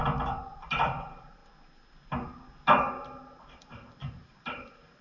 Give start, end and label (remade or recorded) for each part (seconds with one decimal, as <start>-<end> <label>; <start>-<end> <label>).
0.0-0.5 recorded; 0.5-1.4 remade; 1.4-3.4 recorded; 3.4-5.0 remade